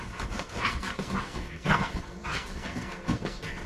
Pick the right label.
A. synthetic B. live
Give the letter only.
A